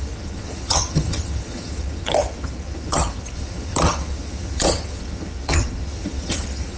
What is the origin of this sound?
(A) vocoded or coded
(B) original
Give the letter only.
A